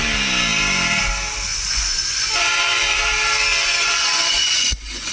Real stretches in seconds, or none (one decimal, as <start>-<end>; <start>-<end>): 0.0-1.5; 3.0-3.5